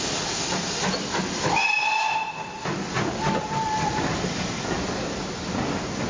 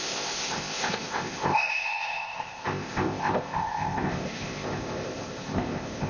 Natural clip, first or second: first